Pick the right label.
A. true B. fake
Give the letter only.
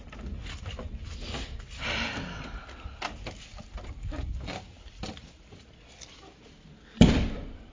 A